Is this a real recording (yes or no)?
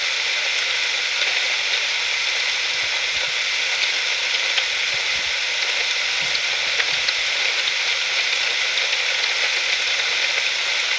yes